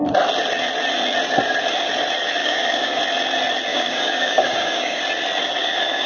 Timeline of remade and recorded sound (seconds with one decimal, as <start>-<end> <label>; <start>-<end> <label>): 0.0-2.4 recorded; 2.4-3.0 remade; 3.0-3.7 recorded; 3.7-5.0 remade; 5.0-5.6 recorded; 5.6-6.1 remade